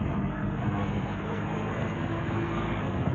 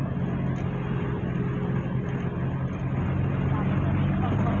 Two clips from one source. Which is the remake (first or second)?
first